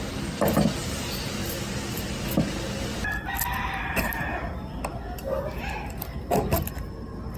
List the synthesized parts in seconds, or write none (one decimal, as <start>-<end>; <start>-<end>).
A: 1.4-2.1